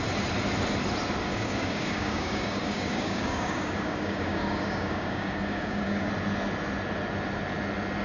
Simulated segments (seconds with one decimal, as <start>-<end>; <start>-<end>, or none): 1.3-6.1